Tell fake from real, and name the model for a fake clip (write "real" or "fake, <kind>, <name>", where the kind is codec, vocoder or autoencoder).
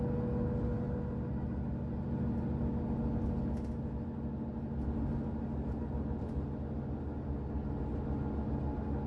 real